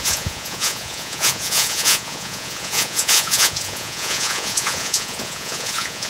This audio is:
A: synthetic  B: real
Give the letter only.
A